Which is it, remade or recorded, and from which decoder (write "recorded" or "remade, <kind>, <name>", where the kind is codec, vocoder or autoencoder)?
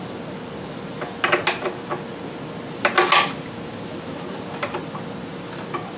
recorded